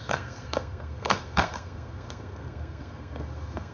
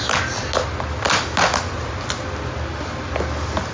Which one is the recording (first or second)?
second